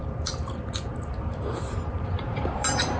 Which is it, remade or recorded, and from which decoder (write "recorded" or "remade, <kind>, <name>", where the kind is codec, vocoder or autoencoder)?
remade, vocoder, BigVGAN v2